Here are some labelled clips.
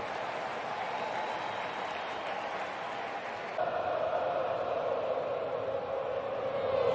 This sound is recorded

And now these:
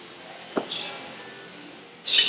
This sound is recorded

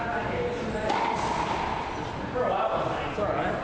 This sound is recorded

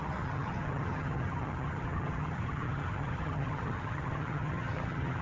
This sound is remade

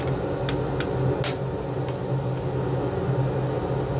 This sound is recorded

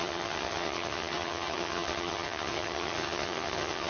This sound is remade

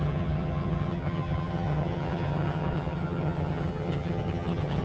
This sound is remade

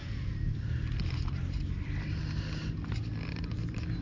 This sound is recorded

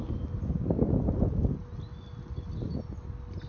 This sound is recorded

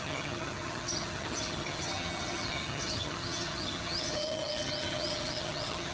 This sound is remade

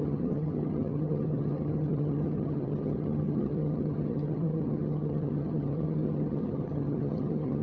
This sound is remade